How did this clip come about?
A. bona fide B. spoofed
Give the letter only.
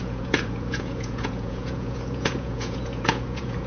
B